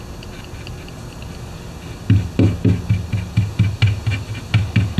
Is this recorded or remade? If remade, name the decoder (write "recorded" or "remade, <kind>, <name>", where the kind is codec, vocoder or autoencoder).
recorded